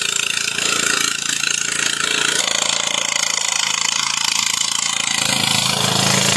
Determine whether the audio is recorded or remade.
recorded